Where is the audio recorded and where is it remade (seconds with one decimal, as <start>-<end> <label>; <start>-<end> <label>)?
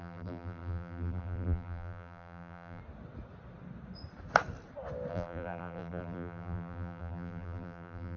0.0-2.8 remade; 2.8-5.1 recorded; 5.1-8.2 remade